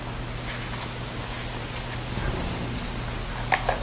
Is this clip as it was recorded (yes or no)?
yes